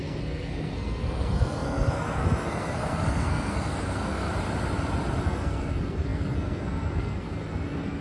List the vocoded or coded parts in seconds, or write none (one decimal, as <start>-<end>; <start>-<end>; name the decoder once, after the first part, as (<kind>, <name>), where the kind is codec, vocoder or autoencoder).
0.0-4.3 (codec, SNAC); 5.2-8.0

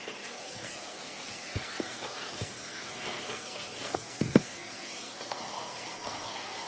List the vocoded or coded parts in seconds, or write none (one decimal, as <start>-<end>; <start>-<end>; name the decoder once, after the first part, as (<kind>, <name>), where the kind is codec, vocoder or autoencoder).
0.0-6.7 (codec, SNAC)